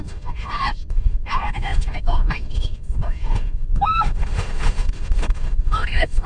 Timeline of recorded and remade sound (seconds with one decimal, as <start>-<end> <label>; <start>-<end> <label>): 0.0-6.3 remade